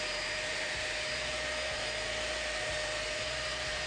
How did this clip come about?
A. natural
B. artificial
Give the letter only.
B